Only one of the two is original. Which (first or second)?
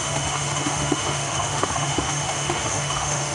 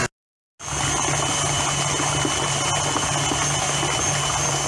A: second